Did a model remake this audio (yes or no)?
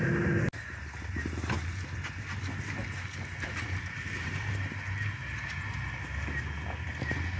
no